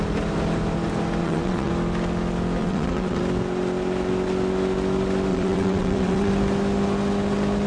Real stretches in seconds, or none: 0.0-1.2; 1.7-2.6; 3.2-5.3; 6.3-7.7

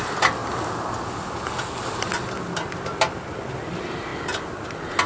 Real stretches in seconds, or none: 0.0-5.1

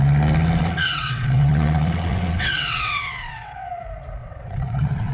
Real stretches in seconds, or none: 0.0-0.6; 3.7-4.2

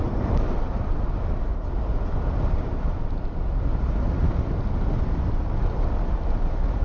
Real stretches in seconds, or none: 0.0-6.8

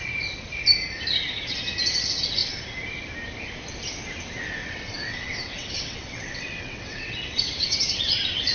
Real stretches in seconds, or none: 0.0-4.6

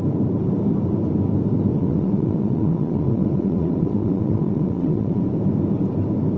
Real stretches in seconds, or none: 0.0-1.7; 5.2-6.4